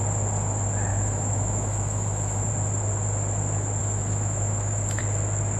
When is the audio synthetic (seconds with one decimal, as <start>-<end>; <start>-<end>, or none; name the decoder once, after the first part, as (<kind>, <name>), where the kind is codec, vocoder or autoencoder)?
0.9-2.5 (autoencoder, DAC-VAE); 3.8-5.0